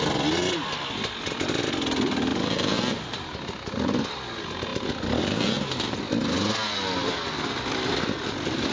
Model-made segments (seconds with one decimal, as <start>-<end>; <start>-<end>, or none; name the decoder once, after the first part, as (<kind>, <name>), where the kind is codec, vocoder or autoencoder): none